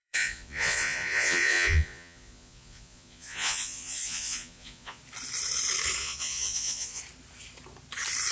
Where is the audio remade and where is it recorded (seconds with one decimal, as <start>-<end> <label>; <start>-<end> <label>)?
0.0-5.0 remade; 5.0-6.0 recorded; 6.0-7.0 remade; 7.0-8.3 recorded